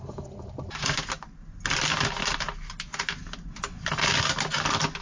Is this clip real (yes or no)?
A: yes